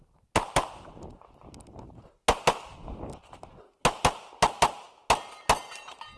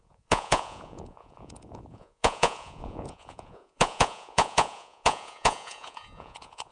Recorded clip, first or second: first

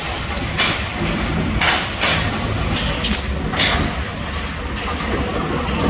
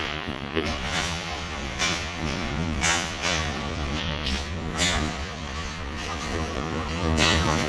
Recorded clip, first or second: first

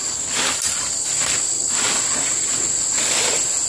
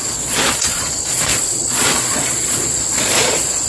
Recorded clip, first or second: first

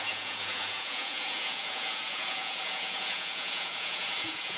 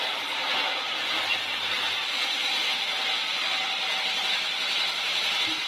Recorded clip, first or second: second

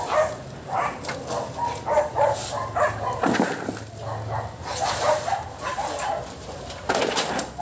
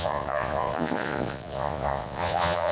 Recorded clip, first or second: first